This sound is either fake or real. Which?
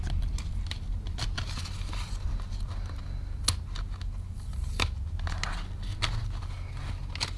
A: real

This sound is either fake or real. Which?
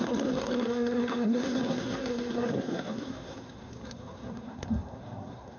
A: fake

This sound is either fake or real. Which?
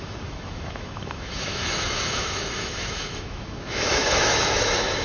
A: fake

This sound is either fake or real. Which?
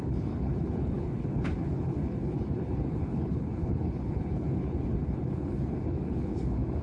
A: fake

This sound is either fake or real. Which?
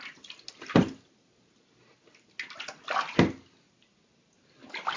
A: real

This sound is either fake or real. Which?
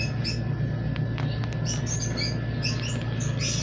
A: real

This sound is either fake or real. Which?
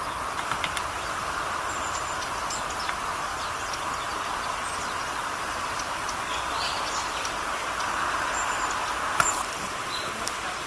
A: real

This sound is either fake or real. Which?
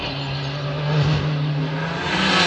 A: real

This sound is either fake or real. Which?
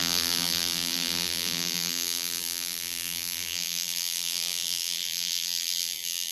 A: fake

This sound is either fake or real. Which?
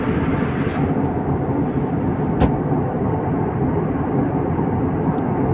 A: real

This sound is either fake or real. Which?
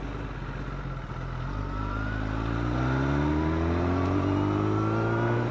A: real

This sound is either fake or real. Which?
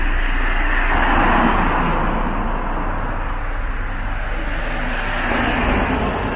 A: real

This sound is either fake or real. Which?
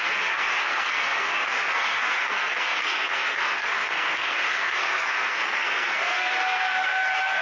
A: fake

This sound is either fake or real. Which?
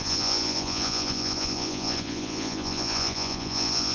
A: fake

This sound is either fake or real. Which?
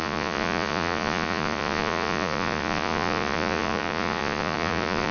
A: fake